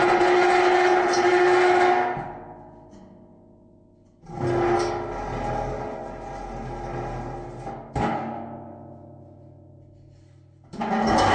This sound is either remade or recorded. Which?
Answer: recorded